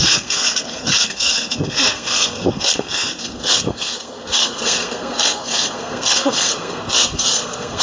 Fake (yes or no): yes